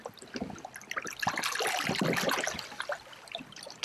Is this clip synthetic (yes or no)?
no